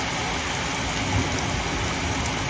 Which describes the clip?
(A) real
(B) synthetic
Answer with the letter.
A